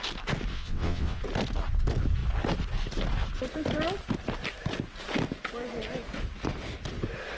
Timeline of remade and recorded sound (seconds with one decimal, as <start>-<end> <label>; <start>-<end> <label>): 0.0-0.5 recorded; 0.5-1.2 remade; 1.2-7.4 recorded